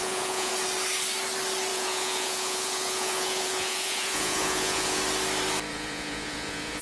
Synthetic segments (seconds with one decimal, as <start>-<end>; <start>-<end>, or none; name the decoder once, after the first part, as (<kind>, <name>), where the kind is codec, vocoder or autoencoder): 0.0-0.5 (vocoder, Vocos); 1.7-5.0; 5.7-6.8